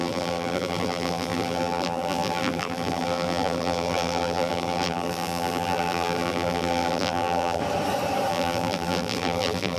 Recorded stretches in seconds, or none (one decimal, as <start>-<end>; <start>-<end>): 7.6-8.3